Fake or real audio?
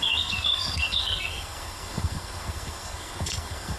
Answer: fake